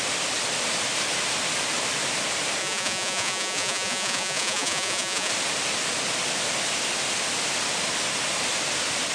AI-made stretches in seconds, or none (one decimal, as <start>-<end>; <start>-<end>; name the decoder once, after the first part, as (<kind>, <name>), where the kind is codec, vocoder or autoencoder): 2.6-5.3 (vocoder, Vocos)